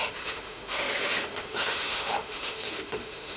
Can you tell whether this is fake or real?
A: fake